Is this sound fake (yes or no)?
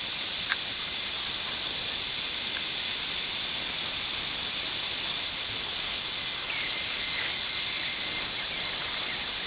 no